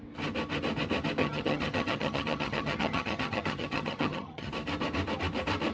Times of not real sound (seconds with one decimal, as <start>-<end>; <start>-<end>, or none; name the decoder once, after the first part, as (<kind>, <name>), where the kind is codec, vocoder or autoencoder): 1.2-4.5 (vocoder, HiFi-GAN)